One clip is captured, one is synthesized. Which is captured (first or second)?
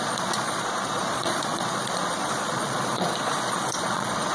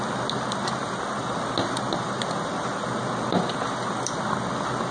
second